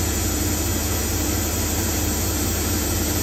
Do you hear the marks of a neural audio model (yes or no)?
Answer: no